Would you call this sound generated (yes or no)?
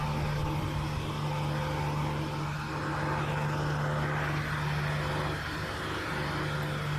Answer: no